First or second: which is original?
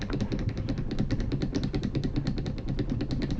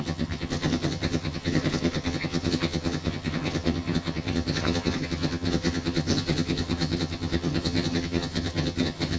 first